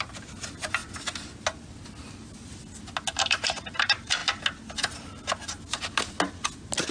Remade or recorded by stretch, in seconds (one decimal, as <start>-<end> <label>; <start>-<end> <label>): 0.0-0.8 remade; 0.8-3.2 recorded; 3.2-4.2 remade; 4.2-6.9 recorded